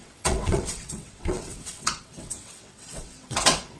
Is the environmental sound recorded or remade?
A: remade